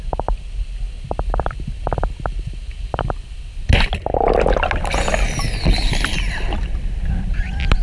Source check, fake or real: real